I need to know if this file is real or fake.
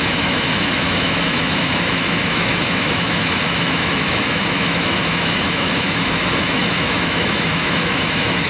fake